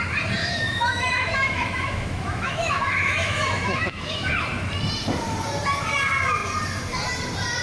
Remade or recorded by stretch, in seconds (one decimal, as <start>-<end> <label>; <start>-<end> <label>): 0.0-0.4 recorded; 0.4-4.3 remade; 4.3-7.6 recorded